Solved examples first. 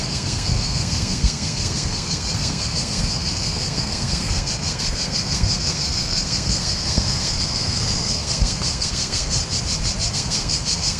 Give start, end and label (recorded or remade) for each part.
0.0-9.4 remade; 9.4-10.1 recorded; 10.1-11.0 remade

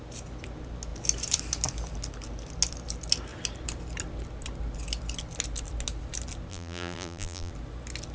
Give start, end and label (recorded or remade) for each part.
0.0-6.5 recorded; 6.5-7.5 remade; 7.5-8.1 recorded